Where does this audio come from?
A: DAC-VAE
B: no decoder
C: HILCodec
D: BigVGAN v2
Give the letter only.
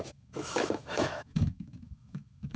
A